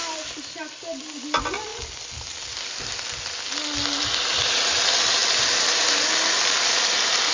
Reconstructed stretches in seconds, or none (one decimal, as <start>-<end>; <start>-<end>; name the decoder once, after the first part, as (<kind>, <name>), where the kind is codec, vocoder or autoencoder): none